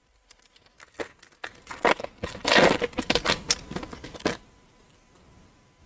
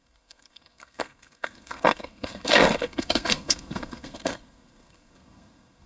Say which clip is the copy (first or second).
second